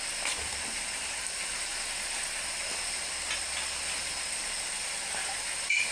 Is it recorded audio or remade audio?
recorded